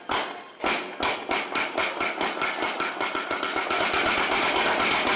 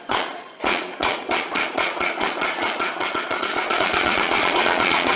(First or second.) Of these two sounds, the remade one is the second